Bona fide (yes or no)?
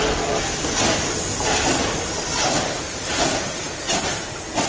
yes